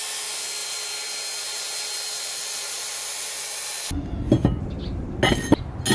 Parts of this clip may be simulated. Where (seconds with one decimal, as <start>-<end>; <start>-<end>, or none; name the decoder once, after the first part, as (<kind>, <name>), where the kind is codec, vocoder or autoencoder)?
0.6-4.1 (vocoder, BigVGAN v2)